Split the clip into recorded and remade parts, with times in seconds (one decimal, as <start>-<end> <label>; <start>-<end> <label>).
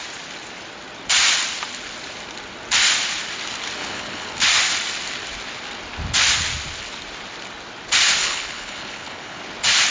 0.0-3.8 recorded; 3.8-4.4 remade; 4.4-8.2 recorded; 8.2-9.4 remade; 9.4-9.9 recorded